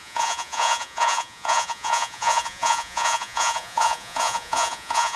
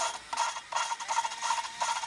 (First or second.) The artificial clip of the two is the first